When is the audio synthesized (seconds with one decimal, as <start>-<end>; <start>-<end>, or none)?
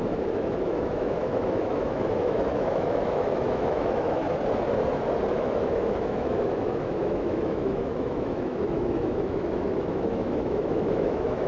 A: 0.0-4.2; 5.3-11.5